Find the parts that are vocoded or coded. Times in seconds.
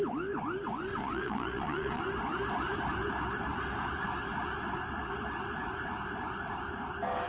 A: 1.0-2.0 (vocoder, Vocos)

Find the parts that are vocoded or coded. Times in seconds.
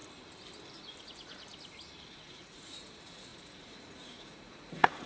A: 1.0-1.5 (vocoder, Vocos); 2.1-5.1